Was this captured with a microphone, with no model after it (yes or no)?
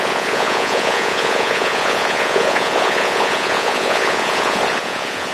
no